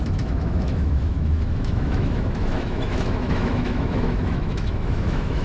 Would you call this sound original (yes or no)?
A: no